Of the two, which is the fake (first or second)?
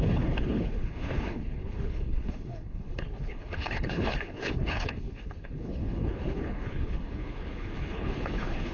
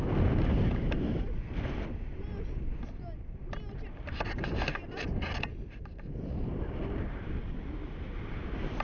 first